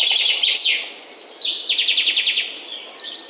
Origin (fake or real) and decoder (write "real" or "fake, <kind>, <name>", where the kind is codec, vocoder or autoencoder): real